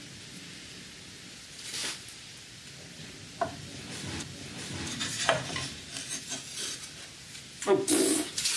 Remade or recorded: recorded